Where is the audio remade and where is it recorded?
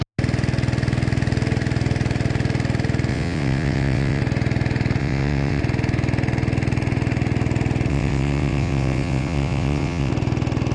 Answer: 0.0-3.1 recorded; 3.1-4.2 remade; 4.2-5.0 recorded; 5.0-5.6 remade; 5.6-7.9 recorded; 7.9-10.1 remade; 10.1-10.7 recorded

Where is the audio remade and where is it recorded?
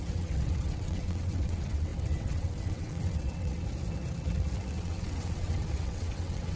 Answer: 0.0-3.6 remade; 3.6-4.8 recorded; 4.8-6.6 remade